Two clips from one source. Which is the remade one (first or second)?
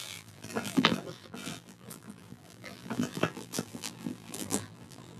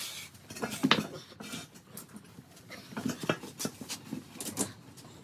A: first